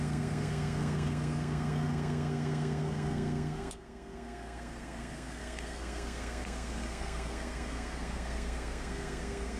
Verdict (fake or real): fake